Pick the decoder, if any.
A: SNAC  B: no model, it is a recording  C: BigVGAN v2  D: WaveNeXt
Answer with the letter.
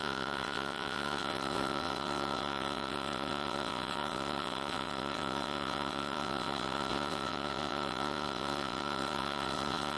D